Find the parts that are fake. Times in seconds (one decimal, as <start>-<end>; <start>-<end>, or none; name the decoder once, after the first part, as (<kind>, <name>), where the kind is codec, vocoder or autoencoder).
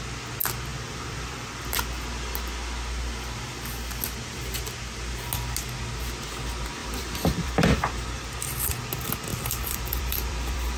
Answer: 0.7-1.5 (vocoder, BigVGAN v2); 6.8-8.3; 9.3-10.8